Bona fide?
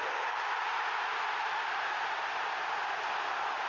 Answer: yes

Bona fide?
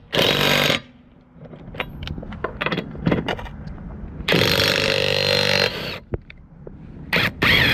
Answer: yes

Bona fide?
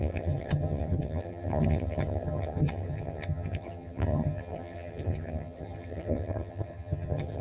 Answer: no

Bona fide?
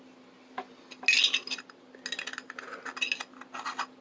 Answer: yes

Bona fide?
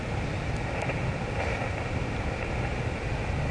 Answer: yes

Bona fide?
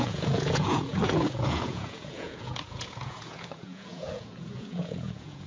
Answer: no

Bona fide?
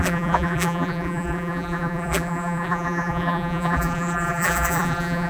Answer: no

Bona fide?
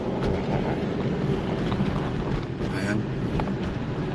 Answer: yes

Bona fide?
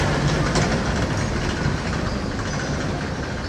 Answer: yes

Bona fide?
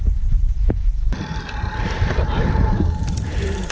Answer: no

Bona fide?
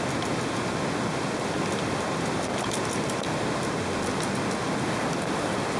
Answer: yes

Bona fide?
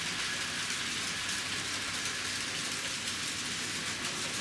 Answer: yes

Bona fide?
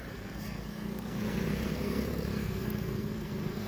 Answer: no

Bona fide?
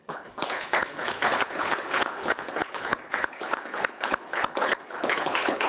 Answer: no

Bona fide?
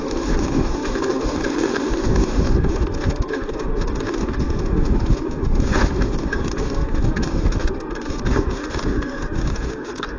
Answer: no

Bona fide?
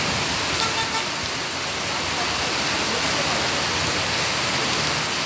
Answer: yes